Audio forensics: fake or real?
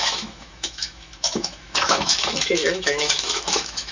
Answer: fake